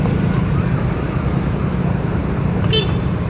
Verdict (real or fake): fake